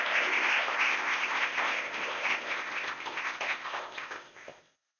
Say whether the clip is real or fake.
fake